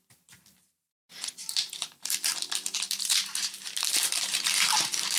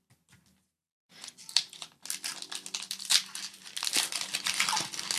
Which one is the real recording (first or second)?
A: second